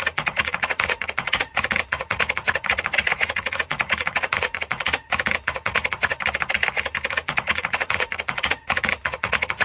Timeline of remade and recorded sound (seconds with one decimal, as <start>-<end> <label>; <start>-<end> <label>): 0.0-6.1 remade; 6.1-7.1 recorded; 7.1-9.6 remade